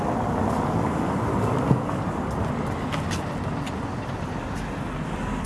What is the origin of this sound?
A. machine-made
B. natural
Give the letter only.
B